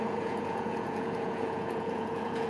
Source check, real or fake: fake